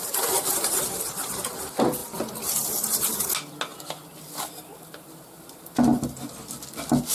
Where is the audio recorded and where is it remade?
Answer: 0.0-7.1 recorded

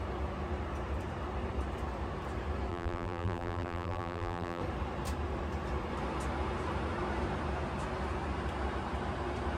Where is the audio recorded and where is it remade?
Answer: 0.0-2.7 recorded; 2.7-4.6 remade; 4.6-9.6 recorded

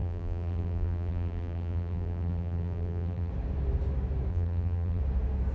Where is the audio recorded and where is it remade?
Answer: 0.0-3.3 remade; 3.3-4.3 recorded; 4.3-5.0 remade; 5.0-5.5 recorded

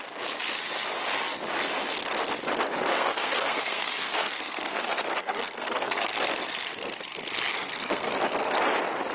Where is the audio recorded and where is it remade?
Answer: 0.0-2.9 recorded; 2.9-6.1 remade; 6.1-7.5 recorded; 7.5-8.1 remade; 8.1-9.1 recorded

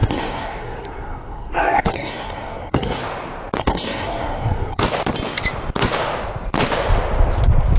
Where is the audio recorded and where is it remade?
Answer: 0.0-3.0 remade; 3.0-3.6 recorded; 3.6-4.8 remade; 4.8-7.8 recorded

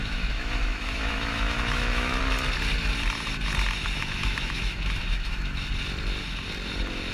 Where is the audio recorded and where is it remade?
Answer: 0.0-2.2 remade; 2.2-4.0 recorded; 4.0-5.7 remade; 5.7-7.1 recorded

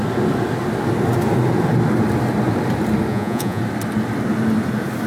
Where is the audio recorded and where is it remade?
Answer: 0.0-3.1 recorded; 3.1-3.6 remade; 3.6-5.1 recorded